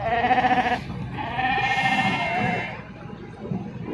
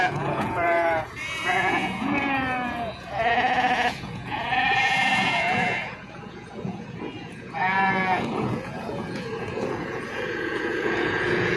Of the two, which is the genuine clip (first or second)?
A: first